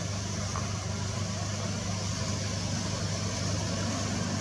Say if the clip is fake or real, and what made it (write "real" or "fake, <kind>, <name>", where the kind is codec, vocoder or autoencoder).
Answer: real